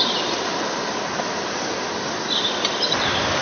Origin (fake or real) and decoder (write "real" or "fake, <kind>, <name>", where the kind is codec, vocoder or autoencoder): real